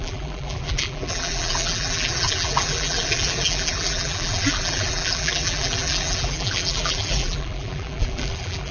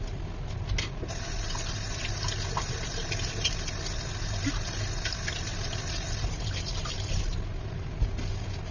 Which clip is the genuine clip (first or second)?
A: second